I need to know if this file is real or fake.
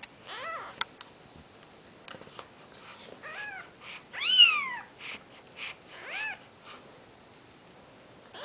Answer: real